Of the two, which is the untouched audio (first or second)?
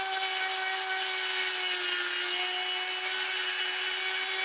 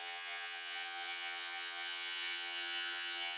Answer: first